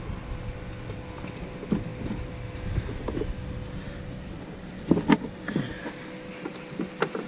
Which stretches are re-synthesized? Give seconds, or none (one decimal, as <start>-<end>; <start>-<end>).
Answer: none